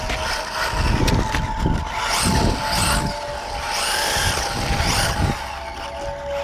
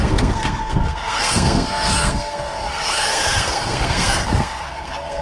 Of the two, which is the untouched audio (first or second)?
first